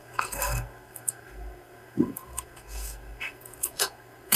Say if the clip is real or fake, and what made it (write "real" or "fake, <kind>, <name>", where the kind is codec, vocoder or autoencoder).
fake, codec, SNAC